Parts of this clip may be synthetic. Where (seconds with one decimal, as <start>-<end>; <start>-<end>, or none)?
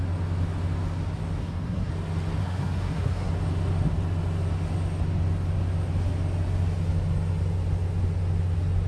1.4-1.9; 2.4-3.3